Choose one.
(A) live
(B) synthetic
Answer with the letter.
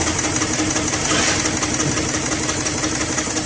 A